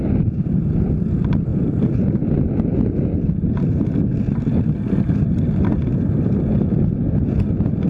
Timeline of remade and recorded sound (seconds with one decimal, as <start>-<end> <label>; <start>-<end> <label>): 0.0-7.9 recorded